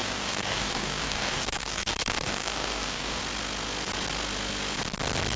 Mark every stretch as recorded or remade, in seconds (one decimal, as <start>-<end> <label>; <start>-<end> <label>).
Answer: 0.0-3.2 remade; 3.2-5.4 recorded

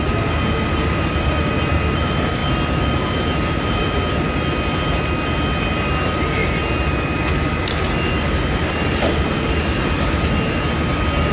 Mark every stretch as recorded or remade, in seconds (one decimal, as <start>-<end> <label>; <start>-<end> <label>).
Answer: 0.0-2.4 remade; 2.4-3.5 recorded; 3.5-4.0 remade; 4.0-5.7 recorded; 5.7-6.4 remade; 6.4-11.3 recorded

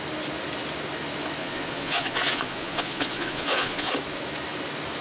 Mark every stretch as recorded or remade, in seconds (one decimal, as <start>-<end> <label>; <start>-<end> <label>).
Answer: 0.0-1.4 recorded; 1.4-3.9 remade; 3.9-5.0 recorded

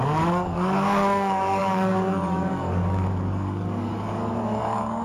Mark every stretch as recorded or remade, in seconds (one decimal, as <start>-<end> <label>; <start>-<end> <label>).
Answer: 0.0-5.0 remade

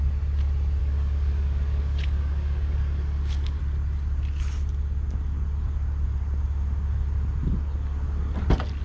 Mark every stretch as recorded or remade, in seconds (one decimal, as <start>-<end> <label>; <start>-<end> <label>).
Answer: 0.0-0.8 recorded; 0.8-3.6 remade; 3.6-8.8 recorded